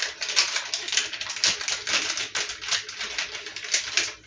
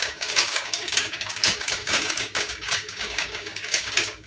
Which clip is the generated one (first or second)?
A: second